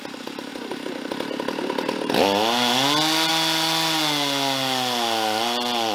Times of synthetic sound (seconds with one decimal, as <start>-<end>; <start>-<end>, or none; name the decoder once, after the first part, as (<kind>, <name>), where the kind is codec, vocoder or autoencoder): none